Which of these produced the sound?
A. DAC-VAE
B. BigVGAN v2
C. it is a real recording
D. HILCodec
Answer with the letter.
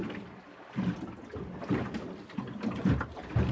C